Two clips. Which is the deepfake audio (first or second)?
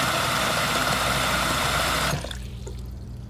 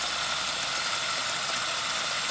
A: first